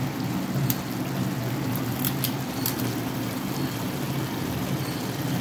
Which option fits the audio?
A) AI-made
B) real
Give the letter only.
B